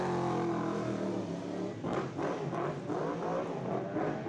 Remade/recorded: recorded